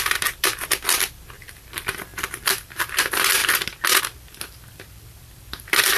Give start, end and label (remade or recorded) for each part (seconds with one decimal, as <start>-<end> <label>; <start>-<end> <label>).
0.0-3.4 remade; 3.4-4.0 recorded; 4.0-6.0 remade